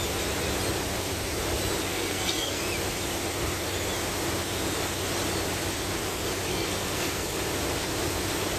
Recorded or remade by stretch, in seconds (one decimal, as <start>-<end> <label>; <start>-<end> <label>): 0.0-1.9 recorded; 1.9-2.6 remade; 2.6-6.5 recorded; 6.5-7.4 remade; 7.4-8.6 recorded